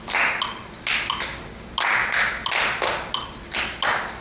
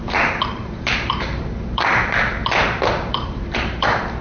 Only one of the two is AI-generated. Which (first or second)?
second